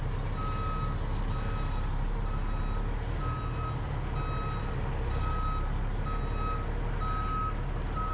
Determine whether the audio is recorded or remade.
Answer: recorded